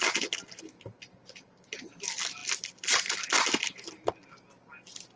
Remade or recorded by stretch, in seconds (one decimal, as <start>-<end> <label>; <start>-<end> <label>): 0.0-5.2 recorded